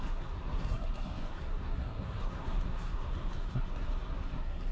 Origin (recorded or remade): remade